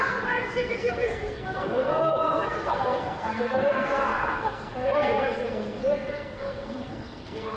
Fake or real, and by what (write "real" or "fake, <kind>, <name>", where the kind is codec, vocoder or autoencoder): fake, codec, SNAC